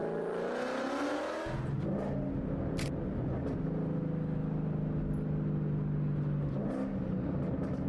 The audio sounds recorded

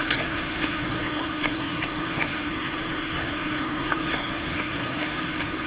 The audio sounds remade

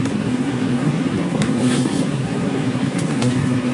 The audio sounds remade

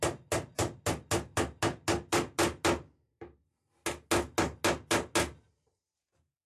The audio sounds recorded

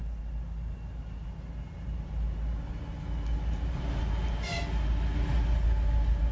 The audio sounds recorded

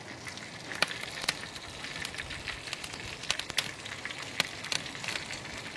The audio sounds recorded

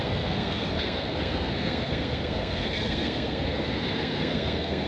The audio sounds remade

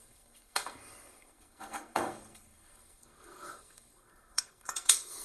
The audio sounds remade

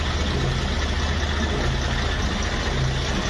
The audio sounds recorded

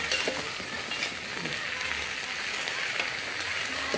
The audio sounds recorded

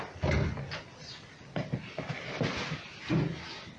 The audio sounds recorded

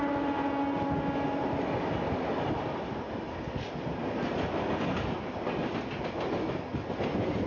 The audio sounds recorded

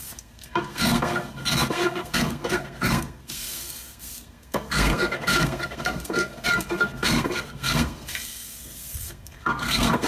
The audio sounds remade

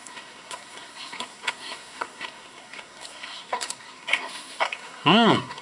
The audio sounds remade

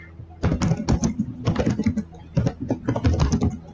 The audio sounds recorded